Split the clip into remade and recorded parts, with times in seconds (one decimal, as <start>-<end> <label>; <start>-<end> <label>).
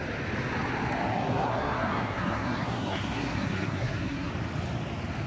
0.0-1.1 recorded; 1.1-4.3 remade; 4.3-5.3 recorded